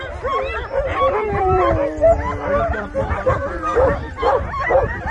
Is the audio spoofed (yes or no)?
yes